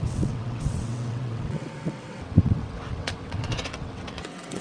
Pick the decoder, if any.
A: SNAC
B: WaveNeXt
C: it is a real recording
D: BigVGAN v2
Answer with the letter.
B